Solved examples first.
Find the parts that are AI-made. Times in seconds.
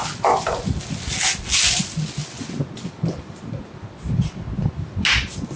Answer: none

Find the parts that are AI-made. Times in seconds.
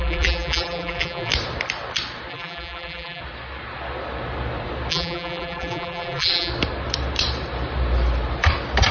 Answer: 0.0-1.3; 2.3-3.2; 4.9-6.5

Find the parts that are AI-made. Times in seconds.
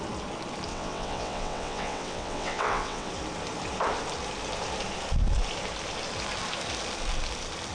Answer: 0.7-3.1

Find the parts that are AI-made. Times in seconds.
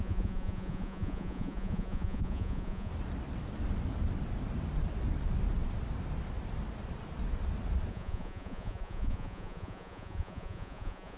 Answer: 0.0-2.9; 7.9-11.2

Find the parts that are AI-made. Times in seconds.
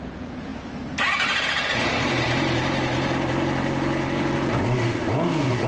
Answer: 0.0-0.5; 1.4-1.9; 5.3-5.7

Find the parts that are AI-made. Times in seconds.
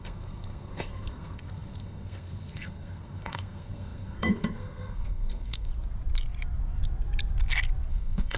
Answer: 0.0-5.7; 7.9-8.4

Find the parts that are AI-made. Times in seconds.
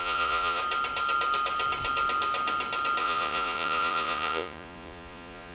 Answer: 0.0-0.6; 3.0-5.5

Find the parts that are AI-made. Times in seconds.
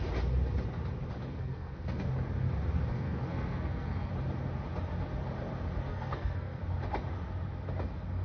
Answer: 1.3-2.1; 2.9-4.1; 5.9-6.6